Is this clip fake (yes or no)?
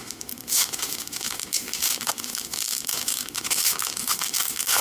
yes